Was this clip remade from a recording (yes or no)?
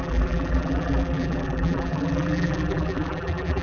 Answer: yes